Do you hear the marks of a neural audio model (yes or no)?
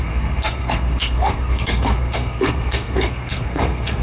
yes